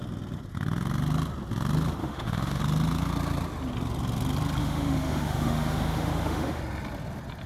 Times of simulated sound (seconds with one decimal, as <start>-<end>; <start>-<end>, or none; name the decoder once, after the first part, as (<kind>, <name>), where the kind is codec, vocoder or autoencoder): 2.0-2.6 (autoencoder, DAC-VAE); 4.6-6.6